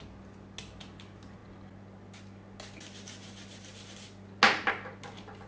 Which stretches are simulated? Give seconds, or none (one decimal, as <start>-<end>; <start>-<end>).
none